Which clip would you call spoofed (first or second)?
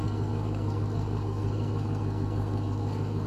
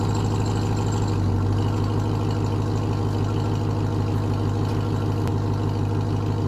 first